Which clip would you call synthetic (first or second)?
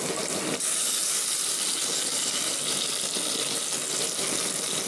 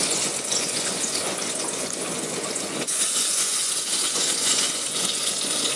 second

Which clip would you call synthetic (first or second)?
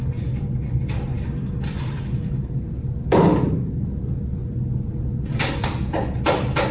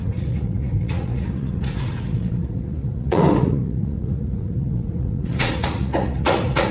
second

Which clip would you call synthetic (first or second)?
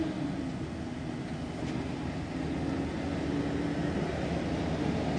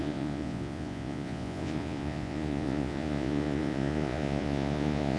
second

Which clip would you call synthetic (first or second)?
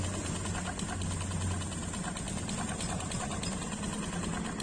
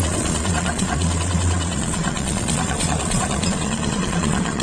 second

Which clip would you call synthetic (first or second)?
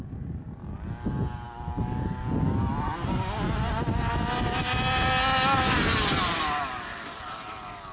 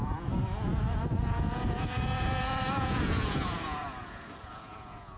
second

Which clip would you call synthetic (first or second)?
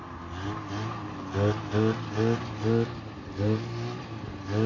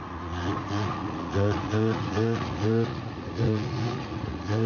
second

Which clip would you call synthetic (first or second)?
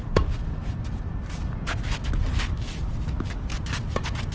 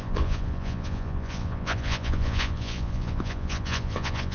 second